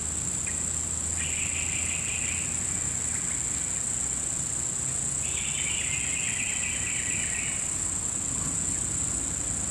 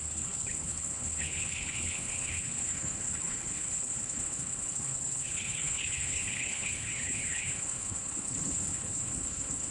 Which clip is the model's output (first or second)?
second